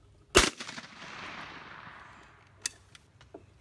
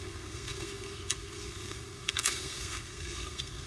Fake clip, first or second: second